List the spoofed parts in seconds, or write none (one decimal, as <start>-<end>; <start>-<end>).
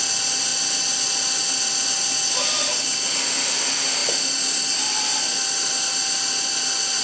none